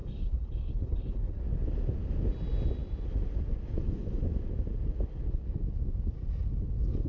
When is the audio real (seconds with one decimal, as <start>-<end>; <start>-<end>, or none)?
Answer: 1.4-7.1